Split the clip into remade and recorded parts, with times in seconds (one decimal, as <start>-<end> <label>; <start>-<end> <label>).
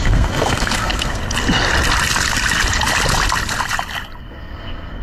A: 0.0-1.2 remade; 1.2-4.2 recorded; 4.2-5.0 remade